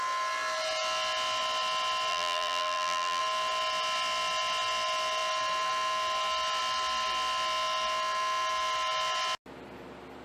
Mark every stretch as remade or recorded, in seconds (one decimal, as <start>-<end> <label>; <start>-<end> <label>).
0.0-2.1 recorded; 2.1-3.2 remade; 3.2-10.2 recorded